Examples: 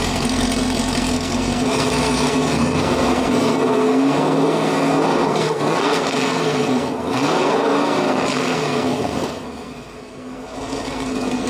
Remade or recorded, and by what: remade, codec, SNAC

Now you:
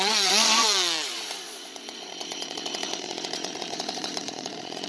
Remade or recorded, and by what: remade, vocoder, Vocos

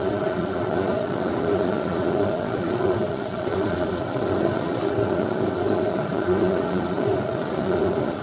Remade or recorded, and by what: remade, vocoder, Vocos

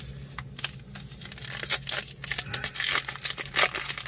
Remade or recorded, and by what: recorded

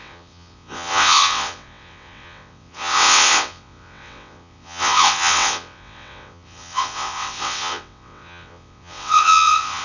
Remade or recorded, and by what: remade, vocoder, WaveNeXt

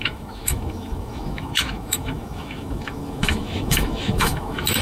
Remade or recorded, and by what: remade, autoencoder, DAC-VAE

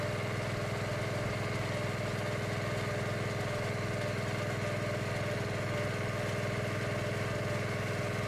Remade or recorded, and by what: recorded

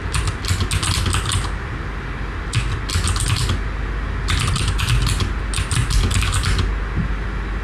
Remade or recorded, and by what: recorded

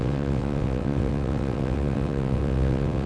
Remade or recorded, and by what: remade, vocoder, WaveNeXt